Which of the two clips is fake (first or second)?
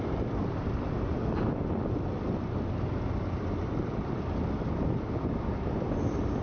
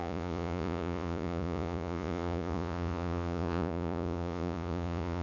second